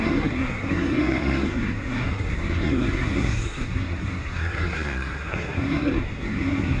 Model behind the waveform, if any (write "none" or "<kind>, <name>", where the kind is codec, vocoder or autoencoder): codec, SNAC